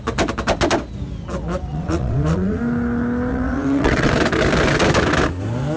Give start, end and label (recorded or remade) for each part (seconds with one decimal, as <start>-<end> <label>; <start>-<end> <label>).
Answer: 0.0-1.7 recorded; 1.7-2.6 remade; 2.6-3.3 recorded; 3.3-4.1 remade; 4.1-5.8 recorded